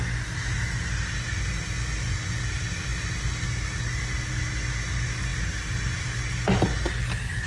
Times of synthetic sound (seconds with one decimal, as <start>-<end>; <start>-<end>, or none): none